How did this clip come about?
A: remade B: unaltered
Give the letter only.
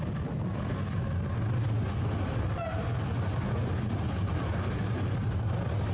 B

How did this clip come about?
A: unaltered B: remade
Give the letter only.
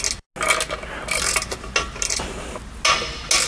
A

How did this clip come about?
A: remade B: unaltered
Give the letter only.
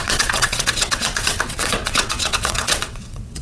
A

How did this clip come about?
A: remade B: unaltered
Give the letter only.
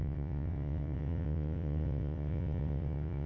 A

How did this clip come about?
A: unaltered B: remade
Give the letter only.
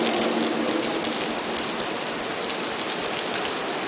A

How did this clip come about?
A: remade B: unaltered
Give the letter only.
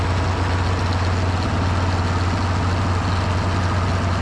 B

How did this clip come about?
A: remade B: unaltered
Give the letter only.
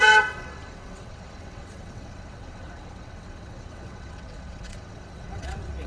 A